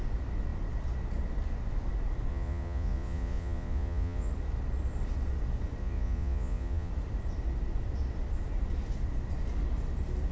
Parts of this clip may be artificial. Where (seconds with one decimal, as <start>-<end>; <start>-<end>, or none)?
2.3-4.3; 5.8-6.9